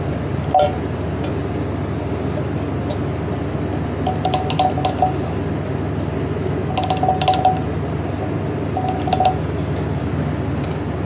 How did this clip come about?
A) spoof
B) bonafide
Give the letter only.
B